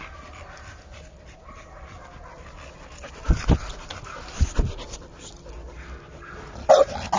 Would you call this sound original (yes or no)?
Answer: yes